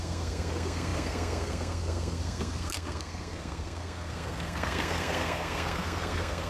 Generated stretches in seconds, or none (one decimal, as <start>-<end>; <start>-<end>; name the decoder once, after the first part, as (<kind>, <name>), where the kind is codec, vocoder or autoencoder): 0.0-6.5 (codec, SNAC)